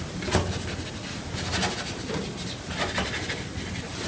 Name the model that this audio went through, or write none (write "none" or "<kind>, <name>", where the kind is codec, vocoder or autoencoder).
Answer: none